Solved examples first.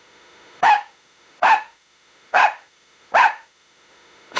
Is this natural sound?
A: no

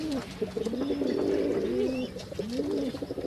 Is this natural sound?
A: yes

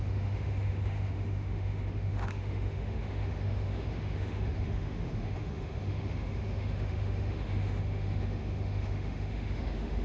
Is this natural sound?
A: no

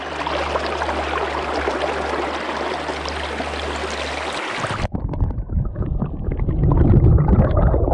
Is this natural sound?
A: yes